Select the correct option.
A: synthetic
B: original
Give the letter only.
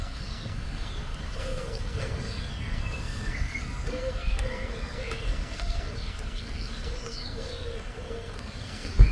A